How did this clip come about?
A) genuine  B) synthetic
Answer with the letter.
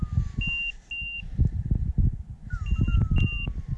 A